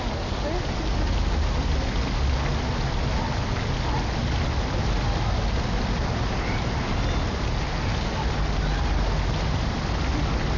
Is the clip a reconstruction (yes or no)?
no